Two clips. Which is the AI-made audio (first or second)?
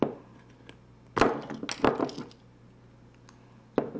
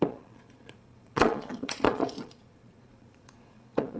second